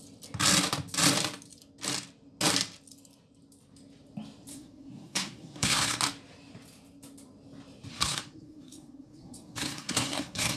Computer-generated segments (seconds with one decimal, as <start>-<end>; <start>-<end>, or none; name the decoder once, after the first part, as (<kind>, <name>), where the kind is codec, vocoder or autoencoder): 4.5-6.0 (codec, SNAC); 7.9-10.6